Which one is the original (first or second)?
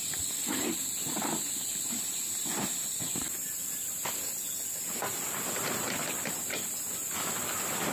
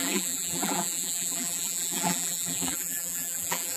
first